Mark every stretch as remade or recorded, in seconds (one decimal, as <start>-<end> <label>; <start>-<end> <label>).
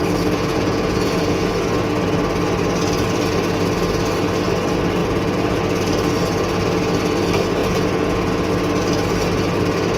0.0-0.5 recorded; 0.5-1.5 remade; 1.5-5.0 recorded; 5.0-5.6 remade; 5.6-7.6 recorded; 7.6-8.5 remade; 8.5-10.0 recorded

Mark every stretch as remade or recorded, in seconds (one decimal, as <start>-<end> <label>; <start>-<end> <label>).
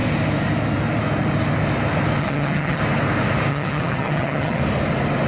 0.0-2.2 recorded; 2.2-2.8 remade; 2.8-3.5 recorded; 3.5-4.6 remade; 4.6-5.3 recorded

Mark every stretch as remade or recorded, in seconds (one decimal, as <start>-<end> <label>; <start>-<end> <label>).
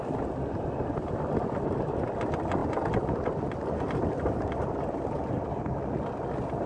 0.0-6.7 recorded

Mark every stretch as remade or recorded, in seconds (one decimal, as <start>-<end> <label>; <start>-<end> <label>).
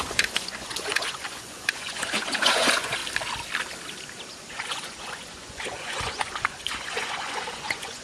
0.0-3.0 remade; 3.0-4.5 recorded; 4.5-8.0 remade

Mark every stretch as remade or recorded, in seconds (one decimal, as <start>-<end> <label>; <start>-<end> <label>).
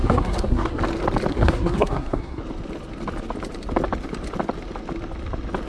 0.0-0.8 remade; 0.8-1.3 recorded; 1.3-2.4 remade; 2.4-5.7 recorded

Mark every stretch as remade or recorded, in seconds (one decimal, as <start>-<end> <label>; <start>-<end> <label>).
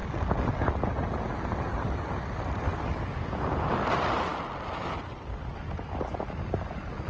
0.0-2.4 recorded; 2.4-4.3 remade; 4.3-4.8 recorded; 4.8-7.1 remade